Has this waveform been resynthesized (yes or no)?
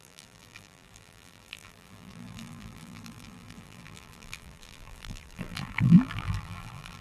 yes